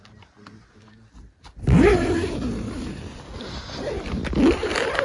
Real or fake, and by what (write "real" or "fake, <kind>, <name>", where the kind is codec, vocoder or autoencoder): real